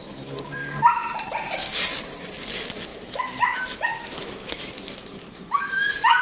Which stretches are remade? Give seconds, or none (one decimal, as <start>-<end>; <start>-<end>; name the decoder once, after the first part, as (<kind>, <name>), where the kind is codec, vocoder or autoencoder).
0.0-0.5 (autoencoder, DAC-VAE); 2.9-6.2